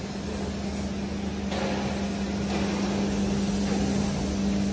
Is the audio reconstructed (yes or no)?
no